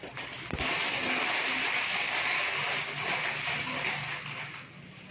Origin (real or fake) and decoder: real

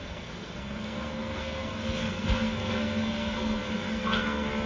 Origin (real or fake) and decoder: fake, codec, SNAC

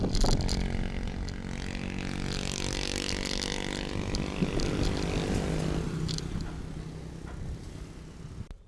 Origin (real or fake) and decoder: real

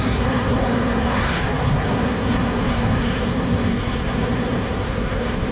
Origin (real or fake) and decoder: fake, codec, SNAC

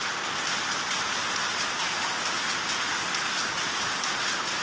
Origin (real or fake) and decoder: real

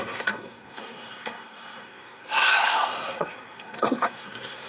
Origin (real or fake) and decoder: fake, codec, SNAC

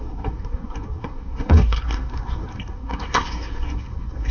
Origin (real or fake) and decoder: fake, codec, SNAC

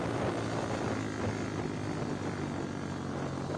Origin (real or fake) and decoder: real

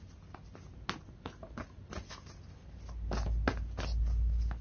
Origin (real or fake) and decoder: real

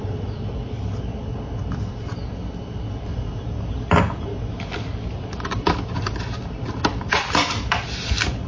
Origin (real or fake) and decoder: real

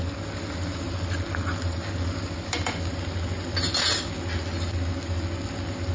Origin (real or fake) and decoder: real